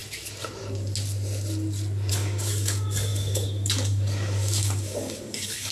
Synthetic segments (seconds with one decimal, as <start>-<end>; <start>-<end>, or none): 2.1-5.7